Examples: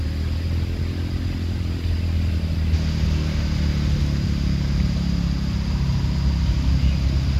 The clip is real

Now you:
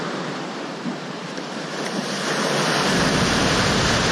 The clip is fake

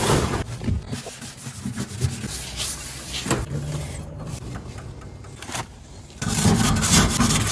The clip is real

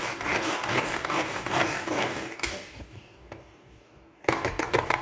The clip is fake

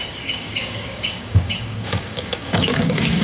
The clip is fake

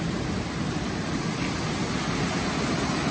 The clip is real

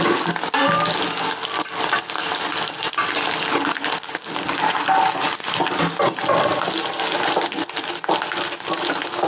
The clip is real